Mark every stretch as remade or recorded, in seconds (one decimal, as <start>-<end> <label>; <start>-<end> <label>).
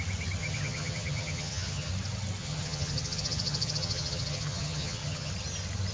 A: 0.0-0.4 recorded; 0.4-1.9 remade; 1.9-2.4 recorded; 2.4-5.3 remade; 5.3-5.9 recorded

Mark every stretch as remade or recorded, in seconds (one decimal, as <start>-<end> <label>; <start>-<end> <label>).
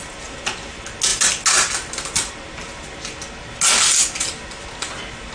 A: 0.0-5.3 recorded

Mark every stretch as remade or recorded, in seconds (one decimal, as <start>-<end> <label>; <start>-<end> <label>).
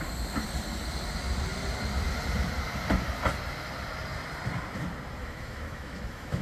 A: 0.0-5.2 recorded; 5.2-6.4 remade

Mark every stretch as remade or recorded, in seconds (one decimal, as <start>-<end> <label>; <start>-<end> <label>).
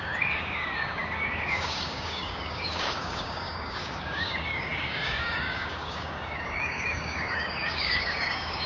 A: 0.0-8.7 remade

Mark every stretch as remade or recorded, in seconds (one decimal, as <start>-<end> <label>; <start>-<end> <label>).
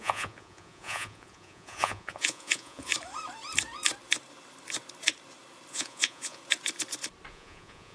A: 0.0-2.9 remade; 2.9-5.7 recorded; 5.7-6.4 remade; 6.4-7.3 recorded; 7.3-7.9 remade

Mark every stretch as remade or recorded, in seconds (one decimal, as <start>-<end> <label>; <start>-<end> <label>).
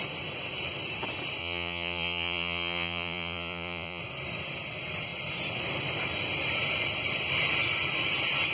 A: 0.0-1.4 recorded; 1.4-4.0 remade; 4.0-8.5 recorded